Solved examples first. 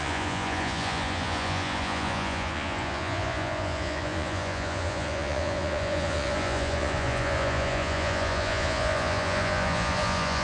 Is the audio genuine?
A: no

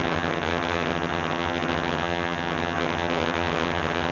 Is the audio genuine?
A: no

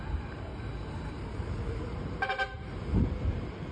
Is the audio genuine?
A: no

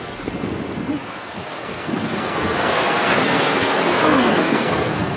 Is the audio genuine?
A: no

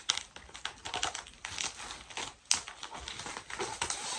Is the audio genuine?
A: yes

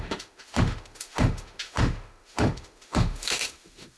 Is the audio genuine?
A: no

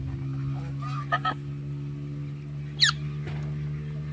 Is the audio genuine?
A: yes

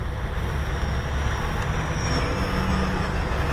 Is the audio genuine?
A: yes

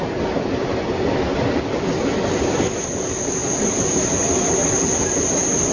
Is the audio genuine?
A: yes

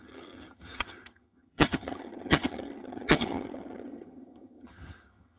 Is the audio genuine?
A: no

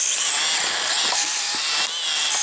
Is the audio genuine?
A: yes